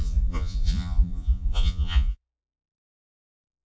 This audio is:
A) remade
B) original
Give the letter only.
A